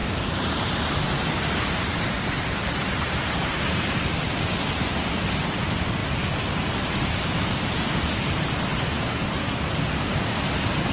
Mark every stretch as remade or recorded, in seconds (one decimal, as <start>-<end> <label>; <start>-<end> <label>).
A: 0.0-4.4 remade; 4.4-6.0 recorded; 6.0-10.2 remade; 10.2-10.9 recorded